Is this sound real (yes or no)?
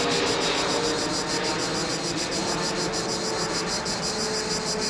yes